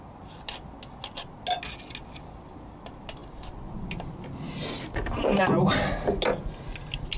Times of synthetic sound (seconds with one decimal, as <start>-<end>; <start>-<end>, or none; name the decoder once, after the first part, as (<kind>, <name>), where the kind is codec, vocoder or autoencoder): none